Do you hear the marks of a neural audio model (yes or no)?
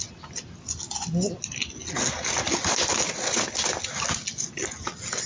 no